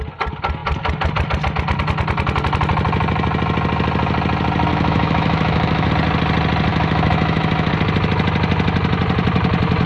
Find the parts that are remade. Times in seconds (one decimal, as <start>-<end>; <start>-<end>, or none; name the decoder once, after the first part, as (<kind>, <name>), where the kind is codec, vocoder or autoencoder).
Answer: 4.7-5.9 (autoencoder, DAC-VAE); 6.7-7.7